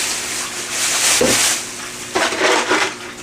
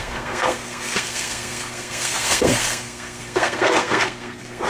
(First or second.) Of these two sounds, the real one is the first